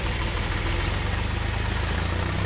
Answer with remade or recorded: recorded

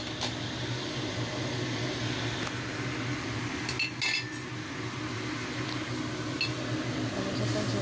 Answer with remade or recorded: recorded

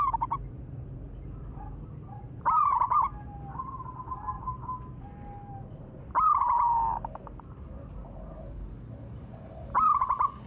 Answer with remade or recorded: remade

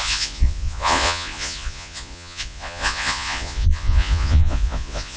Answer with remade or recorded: remade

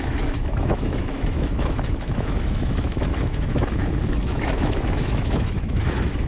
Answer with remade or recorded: remade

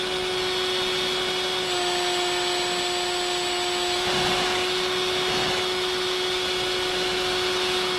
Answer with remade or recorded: recorded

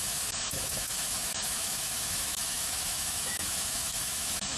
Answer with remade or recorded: remade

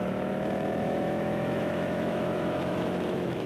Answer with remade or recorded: remade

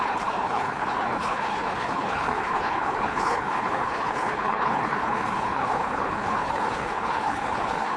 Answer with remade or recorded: remade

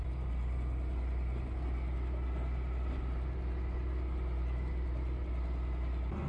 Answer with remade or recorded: recorded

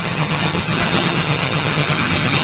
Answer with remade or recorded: remade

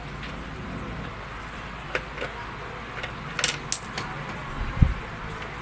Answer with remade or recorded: recorded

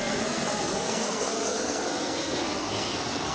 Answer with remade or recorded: remade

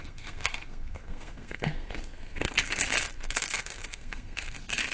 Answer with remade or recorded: remade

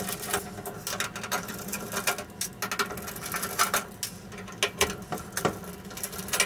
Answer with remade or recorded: recorded